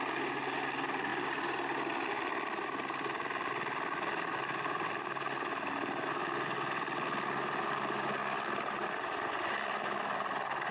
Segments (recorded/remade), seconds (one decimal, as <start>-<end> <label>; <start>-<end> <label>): 0.0-10.7 recorded